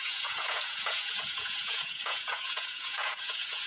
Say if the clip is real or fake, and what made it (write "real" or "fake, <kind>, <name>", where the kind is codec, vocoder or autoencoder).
fake, vocoder, Vocos